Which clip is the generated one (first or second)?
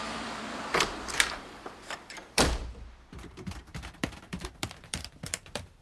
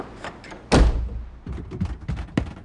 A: first